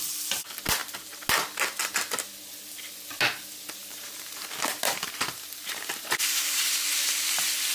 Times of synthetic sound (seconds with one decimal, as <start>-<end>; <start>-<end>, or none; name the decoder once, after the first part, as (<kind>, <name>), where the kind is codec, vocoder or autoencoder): 3.8-6.9 (vocoder, BigVGAN v2)